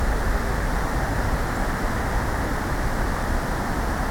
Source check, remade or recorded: remade